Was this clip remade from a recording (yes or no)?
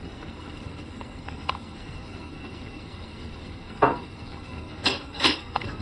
yes